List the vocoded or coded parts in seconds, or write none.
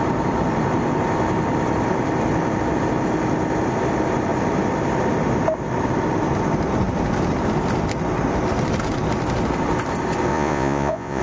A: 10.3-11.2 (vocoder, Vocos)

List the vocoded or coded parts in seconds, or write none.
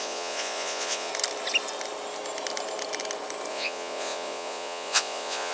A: 0.0-1.1 (vocoder, Vocos); 3.5-5.5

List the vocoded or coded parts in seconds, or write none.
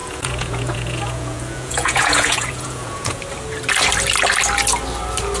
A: 0.0-3.2 (vocoder, Vocos)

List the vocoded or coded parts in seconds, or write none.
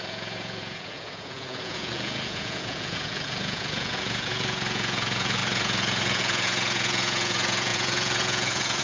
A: 0.0-8.8 (vocoder, Vocos)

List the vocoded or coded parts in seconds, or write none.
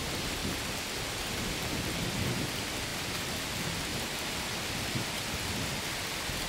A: none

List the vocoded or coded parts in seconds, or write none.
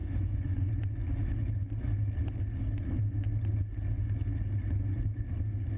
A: 0.0-0.8 (vocoder, Vocos)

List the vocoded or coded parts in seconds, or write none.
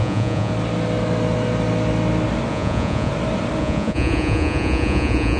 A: 0.0-0.5 (vocoder, Vocos); 2.5-3.1; 3.6-5.4